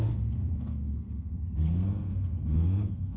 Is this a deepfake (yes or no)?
yes